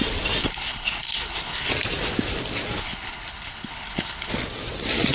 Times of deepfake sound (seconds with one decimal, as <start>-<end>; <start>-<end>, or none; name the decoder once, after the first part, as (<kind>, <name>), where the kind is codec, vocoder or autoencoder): 0.4-1.7 (codec, HILCodec); 2.8-4.3